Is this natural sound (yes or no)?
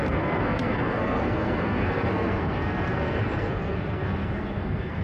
no